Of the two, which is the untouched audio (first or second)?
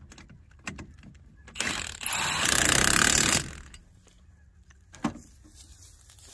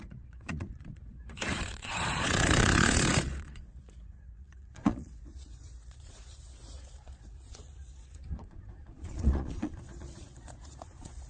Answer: first